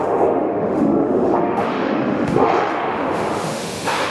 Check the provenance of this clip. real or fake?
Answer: fake